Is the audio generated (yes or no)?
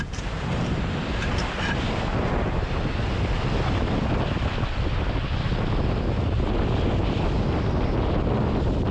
no